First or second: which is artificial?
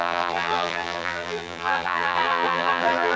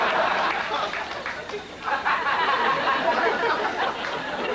first